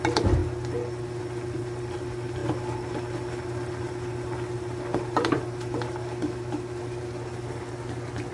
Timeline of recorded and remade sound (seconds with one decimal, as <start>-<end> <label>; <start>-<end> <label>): 0.0-8.3 recorded